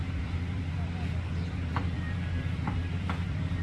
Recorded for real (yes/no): no